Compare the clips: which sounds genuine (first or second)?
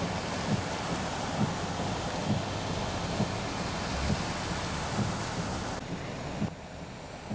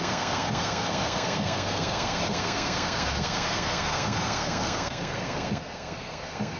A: first